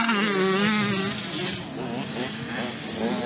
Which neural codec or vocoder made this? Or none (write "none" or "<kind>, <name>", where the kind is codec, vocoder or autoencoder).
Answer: none